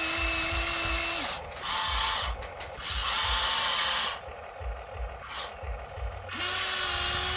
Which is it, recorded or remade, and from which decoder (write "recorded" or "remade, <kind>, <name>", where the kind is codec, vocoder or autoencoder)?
recorded